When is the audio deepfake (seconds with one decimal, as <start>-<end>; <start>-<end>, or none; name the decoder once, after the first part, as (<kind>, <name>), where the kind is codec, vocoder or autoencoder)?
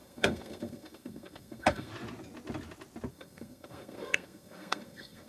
0.0-1.9 (codec, SNAC); 3.1-5.3